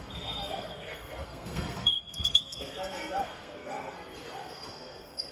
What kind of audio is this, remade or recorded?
remade